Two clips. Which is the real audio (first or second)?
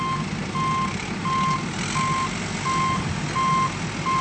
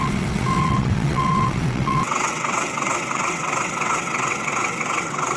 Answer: first